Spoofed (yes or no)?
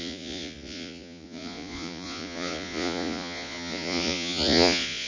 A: yes